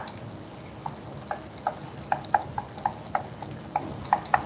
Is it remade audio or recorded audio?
recorded